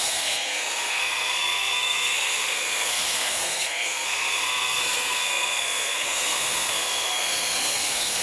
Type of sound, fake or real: fake